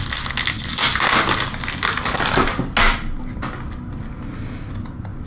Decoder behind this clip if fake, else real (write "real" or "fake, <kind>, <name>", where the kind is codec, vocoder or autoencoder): real